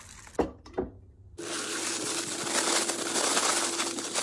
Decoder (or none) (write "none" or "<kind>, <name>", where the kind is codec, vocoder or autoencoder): none